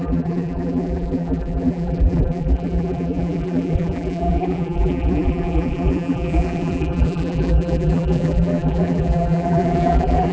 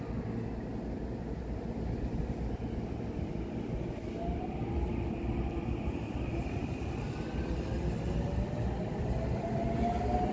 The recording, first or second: second